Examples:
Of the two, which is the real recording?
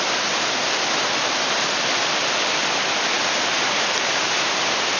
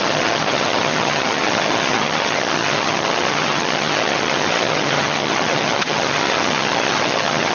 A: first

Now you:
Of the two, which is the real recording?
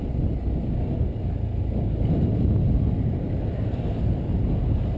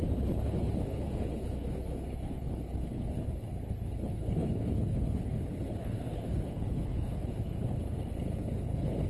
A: first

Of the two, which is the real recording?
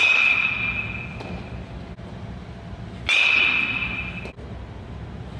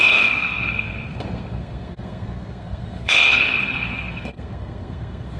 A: first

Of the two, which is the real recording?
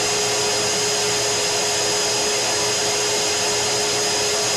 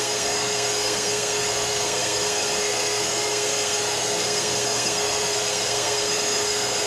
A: first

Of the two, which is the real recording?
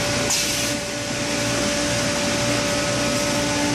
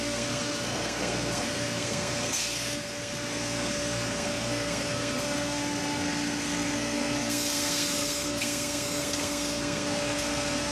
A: first